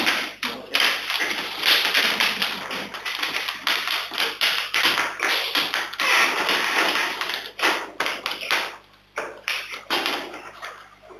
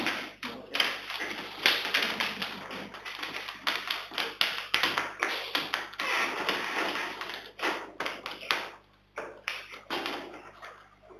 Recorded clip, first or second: second